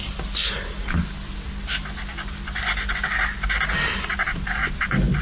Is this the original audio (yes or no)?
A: yes